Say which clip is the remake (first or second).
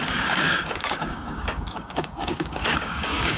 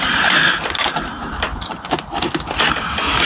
first